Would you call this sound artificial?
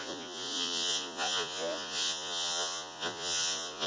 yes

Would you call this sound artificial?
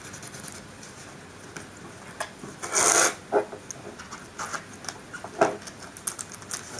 no